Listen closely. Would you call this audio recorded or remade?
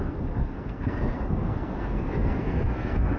remade